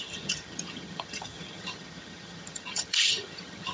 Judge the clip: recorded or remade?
remade